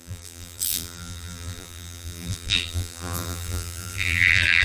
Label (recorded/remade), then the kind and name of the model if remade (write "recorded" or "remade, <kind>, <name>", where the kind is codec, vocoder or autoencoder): remade, vocoder, BigVGAN v2